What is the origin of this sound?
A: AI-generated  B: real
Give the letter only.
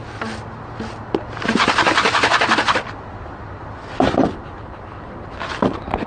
B